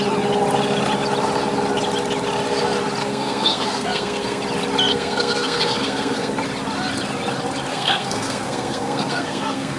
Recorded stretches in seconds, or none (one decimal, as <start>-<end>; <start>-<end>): 0.0-3.0; 4.4-4.9; 6.3-7.7